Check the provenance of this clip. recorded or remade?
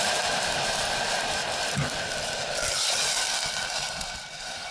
recorded